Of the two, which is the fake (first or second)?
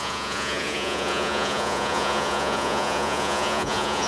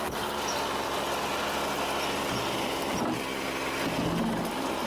first